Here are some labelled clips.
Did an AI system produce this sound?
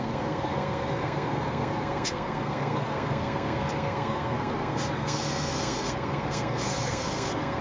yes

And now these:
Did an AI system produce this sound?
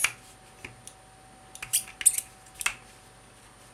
no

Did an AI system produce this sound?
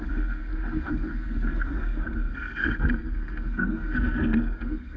yes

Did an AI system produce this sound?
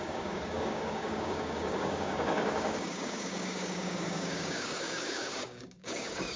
yes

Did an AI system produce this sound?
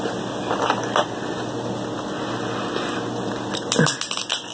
no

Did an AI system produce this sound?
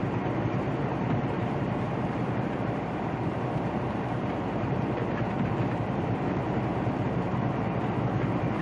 yes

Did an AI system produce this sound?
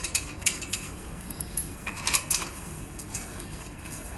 yes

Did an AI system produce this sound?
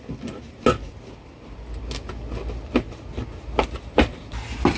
no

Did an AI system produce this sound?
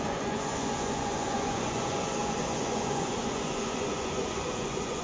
yes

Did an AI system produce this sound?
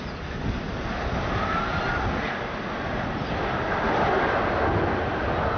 no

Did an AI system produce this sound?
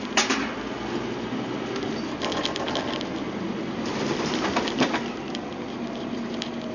no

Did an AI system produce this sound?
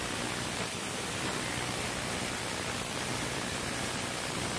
no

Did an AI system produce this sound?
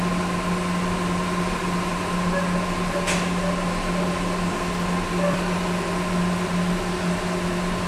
no